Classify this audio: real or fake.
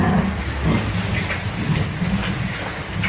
real